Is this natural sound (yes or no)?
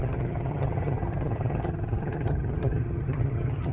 no